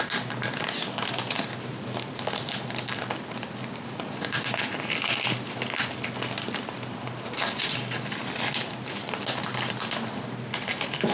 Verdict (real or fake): real